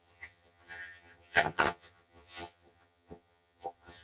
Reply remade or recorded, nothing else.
remade